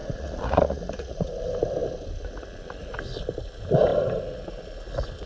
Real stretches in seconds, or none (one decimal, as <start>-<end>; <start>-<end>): 1.3-5.3